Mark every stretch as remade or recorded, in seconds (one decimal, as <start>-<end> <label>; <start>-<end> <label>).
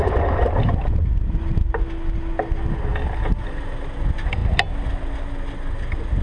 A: 0.0-6.2 recorded